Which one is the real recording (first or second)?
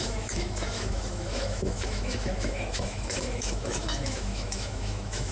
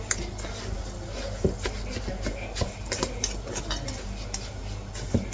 second